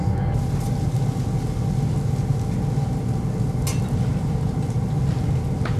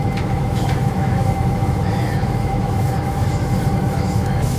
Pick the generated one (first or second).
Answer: second